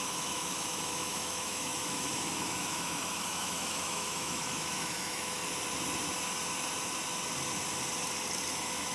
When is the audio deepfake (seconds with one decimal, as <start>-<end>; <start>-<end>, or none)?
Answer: 0.0-5.4; 8.5-8.9